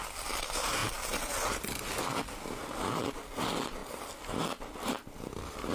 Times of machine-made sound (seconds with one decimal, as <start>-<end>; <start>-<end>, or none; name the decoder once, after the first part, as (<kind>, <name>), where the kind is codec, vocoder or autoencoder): none